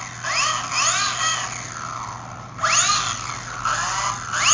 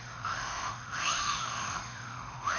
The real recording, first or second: first